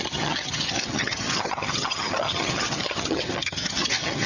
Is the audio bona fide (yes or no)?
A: no